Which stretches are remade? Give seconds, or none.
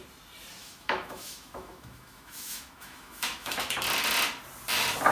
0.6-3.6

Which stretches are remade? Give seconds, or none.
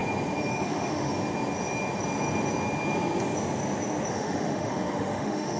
0.5-1.1; 4.1-5.6